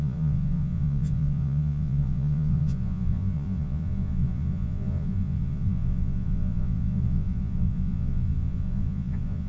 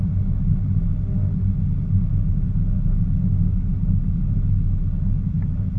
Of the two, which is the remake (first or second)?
first